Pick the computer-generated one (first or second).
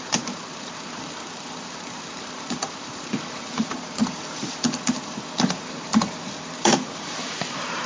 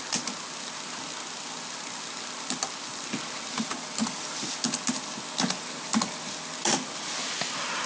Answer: first